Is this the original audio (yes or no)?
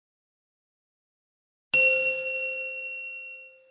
yes